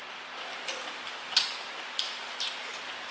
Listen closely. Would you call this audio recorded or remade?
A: recorded